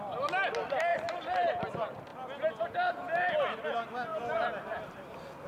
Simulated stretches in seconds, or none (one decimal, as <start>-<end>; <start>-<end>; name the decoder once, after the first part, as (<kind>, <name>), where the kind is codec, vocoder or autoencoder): 0.9-1.6 (vocoder, BigVGAN v2); 4.1-5.0